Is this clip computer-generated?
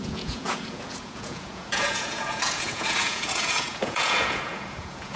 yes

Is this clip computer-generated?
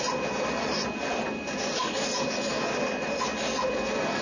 no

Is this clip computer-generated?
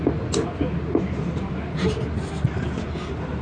no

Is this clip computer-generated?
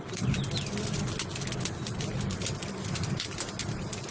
no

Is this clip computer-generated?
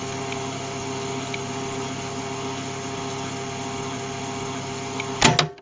no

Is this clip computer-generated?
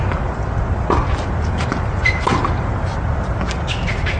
no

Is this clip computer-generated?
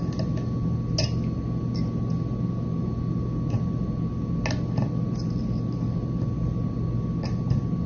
no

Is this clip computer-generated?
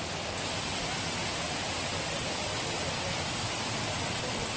no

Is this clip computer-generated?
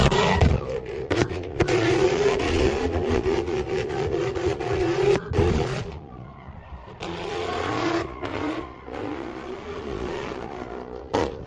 yes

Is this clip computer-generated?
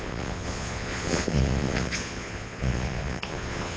yes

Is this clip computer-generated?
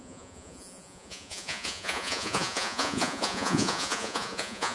yes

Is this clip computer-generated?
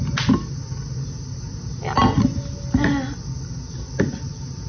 no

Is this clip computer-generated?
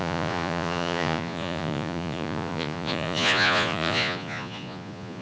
yes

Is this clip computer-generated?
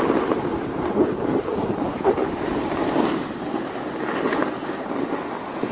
no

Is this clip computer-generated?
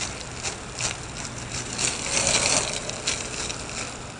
no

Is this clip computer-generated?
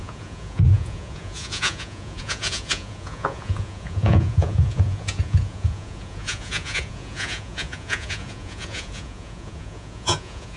yes